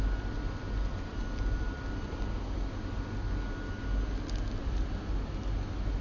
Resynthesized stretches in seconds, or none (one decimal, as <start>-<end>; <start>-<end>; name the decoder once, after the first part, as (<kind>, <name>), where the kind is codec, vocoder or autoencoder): 1.1-2.9 (vocoder, BigVGAN v2); 4.6-5.1